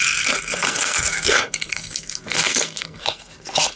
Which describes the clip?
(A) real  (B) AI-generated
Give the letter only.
B